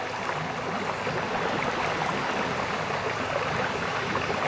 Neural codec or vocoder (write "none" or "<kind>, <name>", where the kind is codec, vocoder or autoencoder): none